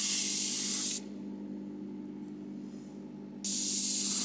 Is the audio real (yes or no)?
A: yes